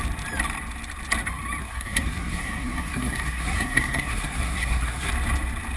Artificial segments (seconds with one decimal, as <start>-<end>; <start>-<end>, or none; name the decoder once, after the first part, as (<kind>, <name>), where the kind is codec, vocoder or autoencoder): 1.6-5.1 (codec, SNAC)